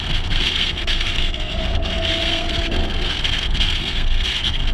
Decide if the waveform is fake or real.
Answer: fake